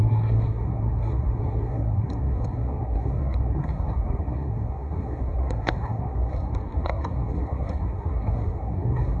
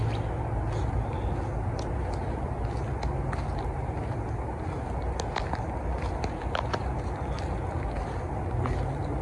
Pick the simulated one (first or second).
first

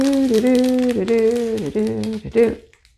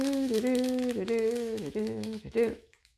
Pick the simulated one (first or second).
second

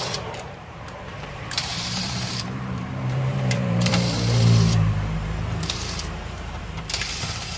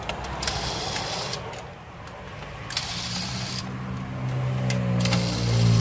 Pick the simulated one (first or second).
first